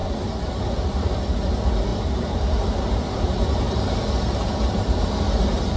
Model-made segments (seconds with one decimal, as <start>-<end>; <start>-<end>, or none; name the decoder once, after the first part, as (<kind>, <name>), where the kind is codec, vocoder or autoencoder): 1.9-4.0 (vocoder, BigVGAN v2)